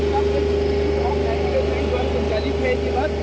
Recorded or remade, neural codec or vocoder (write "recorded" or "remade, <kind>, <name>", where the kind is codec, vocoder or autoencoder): recorded